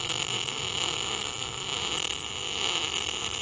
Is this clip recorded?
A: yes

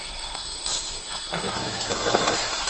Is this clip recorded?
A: no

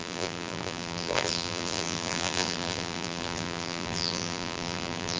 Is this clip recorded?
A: no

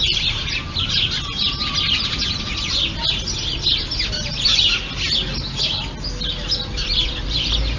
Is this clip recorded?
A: yes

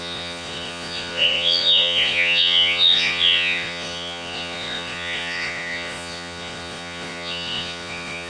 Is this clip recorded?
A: no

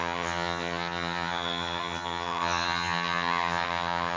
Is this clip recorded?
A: no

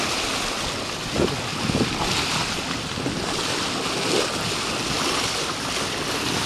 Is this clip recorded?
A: yes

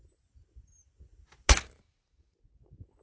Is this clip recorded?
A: yes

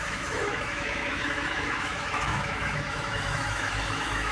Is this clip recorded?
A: no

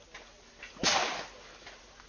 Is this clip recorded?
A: yes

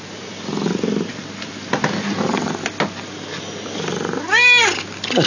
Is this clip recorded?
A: yes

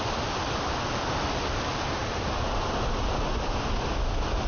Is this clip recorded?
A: yes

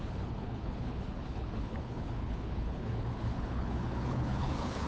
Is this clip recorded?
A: no